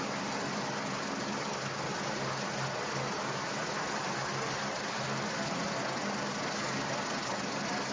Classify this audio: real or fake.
real